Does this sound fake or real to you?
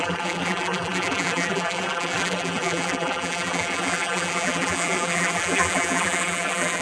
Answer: fake